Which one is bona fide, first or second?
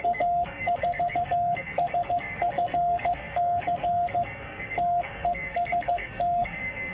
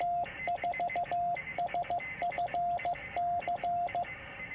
second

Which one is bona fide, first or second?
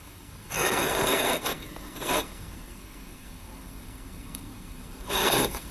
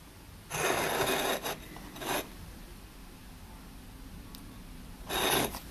second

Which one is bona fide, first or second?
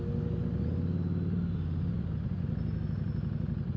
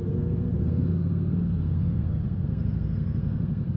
first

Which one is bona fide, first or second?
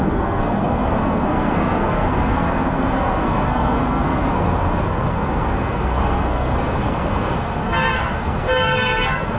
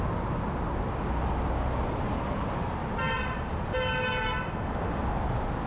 second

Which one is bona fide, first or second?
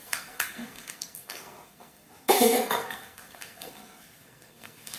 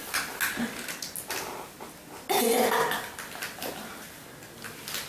second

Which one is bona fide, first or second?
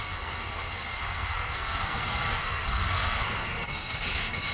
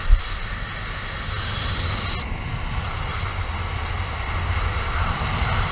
second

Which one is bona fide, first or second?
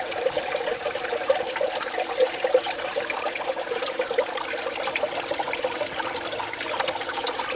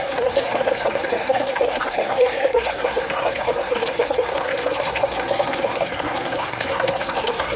first